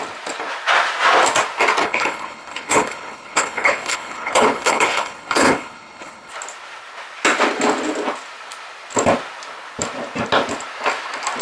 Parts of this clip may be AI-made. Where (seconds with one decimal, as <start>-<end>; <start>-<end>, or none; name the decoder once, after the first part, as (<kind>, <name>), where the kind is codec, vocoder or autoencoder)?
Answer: 1.8-6.3 (codec, HILCodec)